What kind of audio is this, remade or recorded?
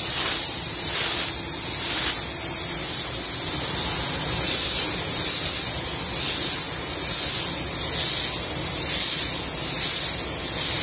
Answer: recorded